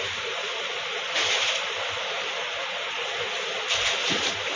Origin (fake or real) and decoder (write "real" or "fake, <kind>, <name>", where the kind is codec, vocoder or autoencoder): real